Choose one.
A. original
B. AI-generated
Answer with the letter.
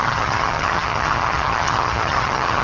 B